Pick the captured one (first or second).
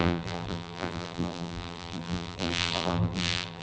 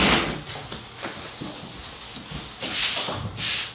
second